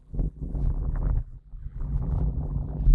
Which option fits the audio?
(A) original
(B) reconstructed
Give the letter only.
B